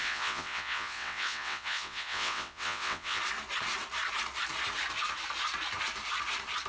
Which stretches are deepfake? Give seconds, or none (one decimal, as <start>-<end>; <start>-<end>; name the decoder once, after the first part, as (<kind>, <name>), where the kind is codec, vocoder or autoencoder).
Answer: 0.0-3.2 (vocoder, WaveNeXt)